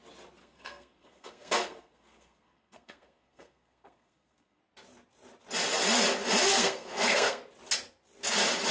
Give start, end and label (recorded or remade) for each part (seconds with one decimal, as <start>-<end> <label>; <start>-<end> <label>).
0.0-0.4 recorded; 0.4-4.6 remade; 4.6-6.5 recorded; 6.5-7.4 remade; 7.4-8.7 recorded